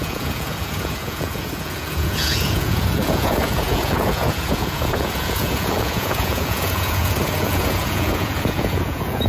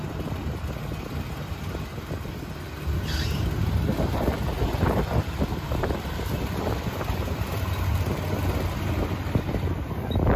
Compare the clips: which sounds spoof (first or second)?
first